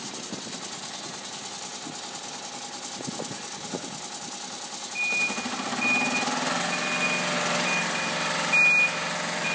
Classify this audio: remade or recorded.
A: recorded